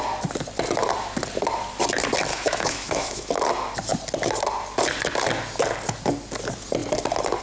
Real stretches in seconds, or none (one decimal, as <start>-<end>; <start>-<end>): 0.0-2.3; 3.3-7.4